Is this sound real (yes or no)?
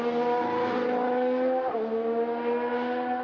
yes